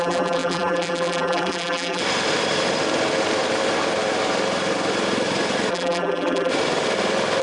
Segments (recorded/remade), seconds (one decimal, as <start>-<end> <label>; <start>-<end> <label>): 0.0-2.0 remade; 2.0-5.7 recorded; 5.7-6.5 remade; 6.5-7.4 recorded